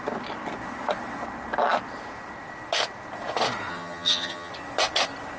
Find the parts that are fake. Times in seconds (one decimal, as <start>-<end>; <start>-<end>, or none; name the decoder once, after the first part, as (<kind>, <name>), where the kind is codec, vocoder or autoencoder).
3.7-4.5 (vocoder, HiFi-GAN)